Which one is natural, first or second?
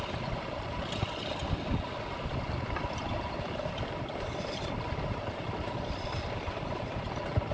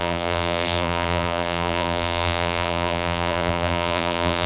first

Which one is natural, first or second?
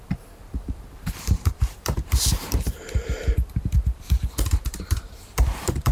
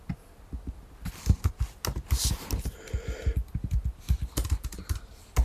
second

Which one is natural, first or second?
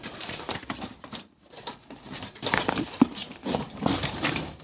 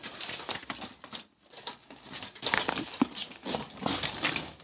second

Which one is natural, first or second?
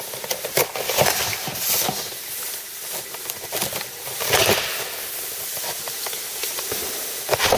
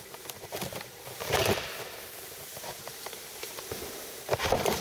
first